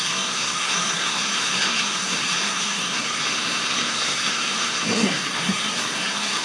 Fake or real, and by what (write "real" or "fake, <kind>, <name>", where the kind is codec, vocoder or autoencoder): fake, codec, SNAC